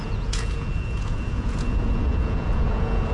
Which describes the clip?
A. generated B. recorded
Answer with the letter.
A